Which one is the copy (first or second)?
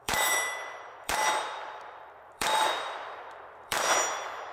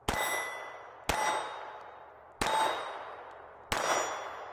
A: first